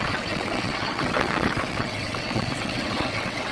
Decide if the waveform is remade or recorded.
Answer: remade